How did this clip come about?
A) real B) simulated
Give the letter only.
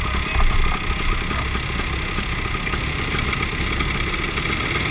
A